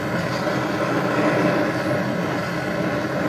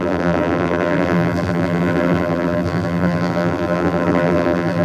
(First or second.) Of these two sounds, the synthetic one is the second